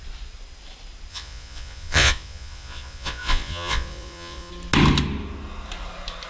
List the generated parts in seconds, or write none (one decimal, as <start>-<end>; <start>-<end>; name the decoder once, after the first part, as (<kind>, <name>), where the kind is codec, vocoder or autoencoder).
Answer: 1.1-4.5 (vocoder, Vocos)